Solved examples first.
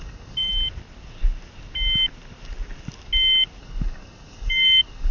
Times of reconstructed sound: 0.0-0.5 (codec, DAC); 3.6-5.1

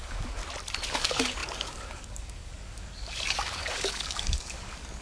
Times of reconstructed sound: 0.0-0.4 (codec, DAC); 0.9-5.0